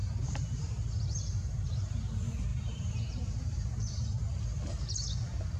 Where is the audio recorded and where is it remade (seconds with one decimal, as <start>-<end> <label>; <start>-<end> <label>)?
0.0-1.7 remade; 1.7-2.5 recorded; 2.5-4.2 remade; 4.2-5.6 recorded